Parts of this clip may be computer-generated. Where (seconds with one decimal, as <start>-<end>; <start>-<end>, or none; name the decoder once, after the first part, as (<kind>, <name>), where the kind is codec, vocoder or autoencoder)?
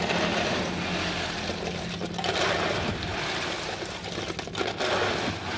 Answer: none